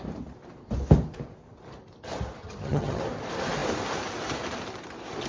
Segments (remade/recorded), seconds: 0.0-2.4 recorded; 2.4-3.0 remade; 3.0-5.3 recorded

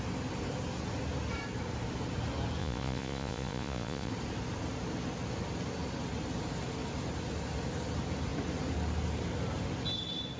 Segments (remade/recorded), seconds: 0.0-2.6 recorded; 2.6-4.1 remade; 4.1-10.4 recorded

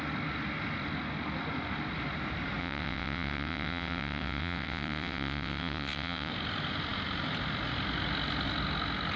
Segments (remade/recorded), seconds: 0.0-2.6 recorded; 2.6-6.3 remade; 6.3-9.2 recorded

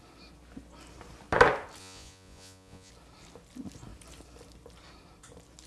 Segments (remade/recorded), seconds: 0.0-1.8 recorded; 1.8-2.9 remade; 2.9-5.7 recorded

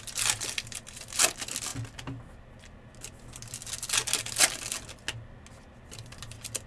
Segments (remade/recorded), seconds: 0.0-6.7 recorded

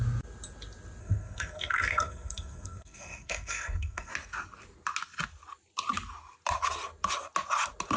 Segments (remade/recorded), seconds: 0.0-1.0 recorded; 1.0-4.1 remade; 4.1-8.0 recorded

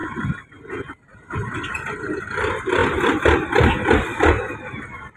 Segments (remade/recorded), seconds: 0.0-5.2 recorded